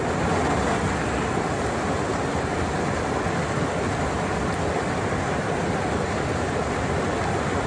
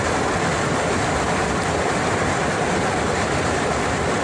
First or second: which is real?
first